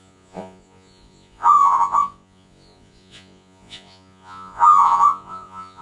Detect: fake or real fake